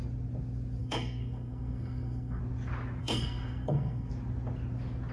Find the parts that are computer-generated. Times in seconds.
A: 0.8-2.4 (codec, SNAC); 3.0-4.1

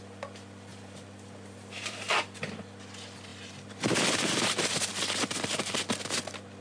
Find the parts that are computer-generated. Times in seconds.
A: 0.7-2.2 (vocoder, BigVGAN v2); 3.3-4.9

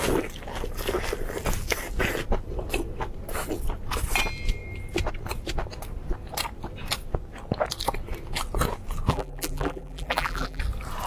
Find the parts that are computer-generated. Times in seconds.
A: 9.1-10.6 (vocoder, BigVGAN v2)

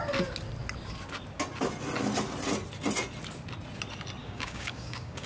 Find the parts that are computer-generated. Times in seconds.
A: 4.2-5.3 (codec, DAC)

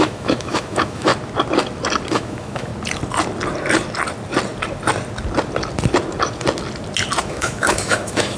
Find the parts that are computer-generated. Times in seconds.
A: 0.0-1.1 (autoencoder, DAC-VAE); 2.1-2.7; 7.2-8.4

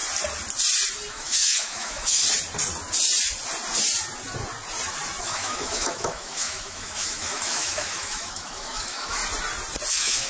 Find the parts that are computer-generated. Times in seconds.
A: 1.1-2.2 (autoencoder, DAC-VAE); 5.2-9.2; 9.9-10.3